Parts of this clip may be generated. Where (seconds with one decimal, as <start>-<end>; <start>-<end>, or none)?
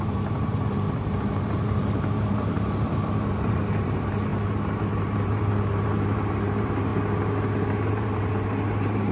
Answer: 0.0-4.3; 4.8-6.9; 7.9-9.1